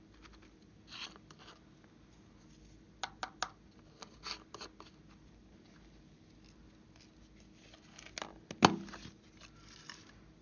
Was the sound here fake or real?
real